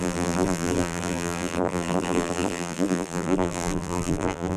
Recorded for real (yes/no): no